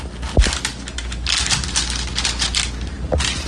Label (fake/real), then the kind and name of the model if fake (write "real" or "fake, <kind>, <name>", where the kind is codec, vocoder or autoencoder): real